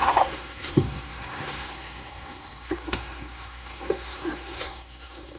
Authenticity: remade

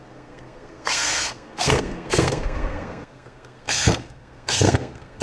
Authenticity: remade